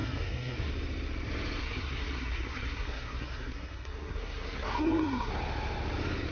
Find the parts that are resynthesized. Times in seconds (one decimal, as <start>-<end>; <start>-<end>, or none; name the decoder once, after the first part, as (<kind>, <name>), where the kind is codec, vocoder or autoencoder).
0.0-0.7 (codec, SNAC); 1.6-5.3

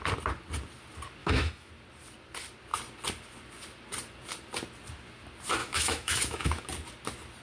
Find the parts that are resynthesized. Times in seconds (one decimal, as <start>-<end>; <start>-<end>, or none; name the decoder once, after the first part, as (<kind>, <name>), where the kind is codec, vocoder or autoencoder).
1.2-1.7 (autoencoder, DAC-VAE); 5.6-6.7

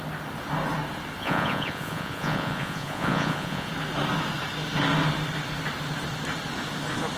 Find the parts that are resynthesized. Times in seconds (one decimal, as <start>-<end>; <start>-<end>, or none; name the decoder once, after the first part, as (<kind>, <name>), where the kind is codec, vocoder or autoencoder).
1.2-3.7 (vocoder, Vocos)

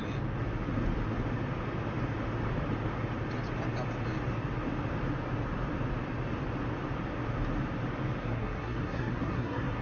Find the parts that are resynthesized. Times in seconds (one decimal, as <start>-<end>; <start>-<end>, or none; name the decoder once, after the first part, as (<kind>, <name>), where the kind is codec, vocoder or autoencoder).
8.2-9.8 (codec, SNAC)